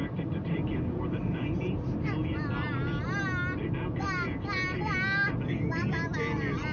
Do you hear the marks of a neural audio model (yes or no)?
no